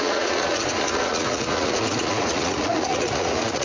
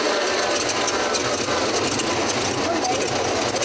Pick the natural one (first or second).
second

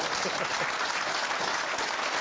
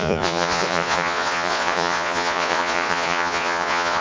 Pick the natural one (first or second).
first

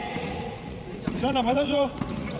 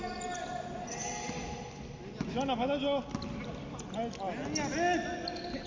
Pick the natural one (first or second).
second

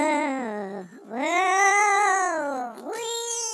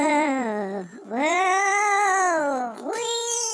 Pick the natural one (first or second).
first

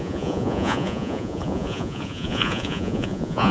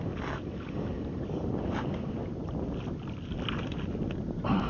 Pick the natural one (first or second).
second